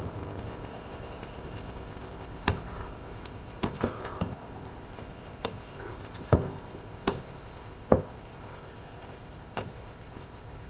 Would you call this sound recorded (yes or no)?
no